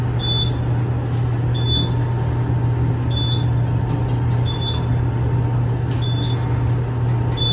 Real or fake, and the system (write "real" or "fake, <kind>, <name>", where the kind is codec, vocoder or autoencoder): real